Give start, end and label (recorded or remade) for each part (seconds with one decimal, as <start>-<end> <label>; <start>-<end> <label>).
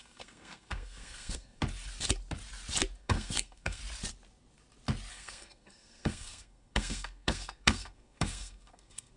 0.0-1.6 remade; 1.6-3.0 recorded; 3.0-3.8 remade; 3.8-5.1 recorded; 5.1-9.2 remade